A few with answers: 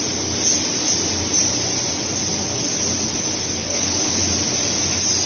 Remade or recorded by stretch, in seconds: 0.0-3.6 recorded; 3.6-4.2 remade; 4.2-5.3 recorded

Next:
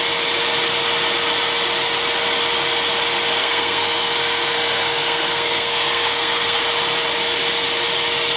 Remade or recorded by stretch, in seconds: 0.0-3.4 recorded; 3.4-6.6 remade; 6.6-8.4 recorded

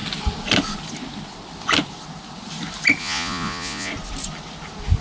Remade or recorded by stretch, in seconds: 0.0-3.0 recorded; 3.0-3.9 remade; 3.9-5.0 recorded

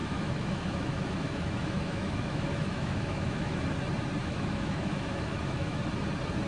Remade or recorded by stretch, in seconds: 0.0-3.6 remade; 3.6-4.2 recorded; 4.2-5.8 remade; 5.8-6.5 recorded

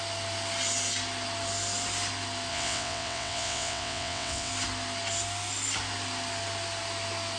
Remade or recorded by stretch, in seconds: 0.0-2.5 recorded; 2.5-4.5 remade; 4.5-7.4 recorded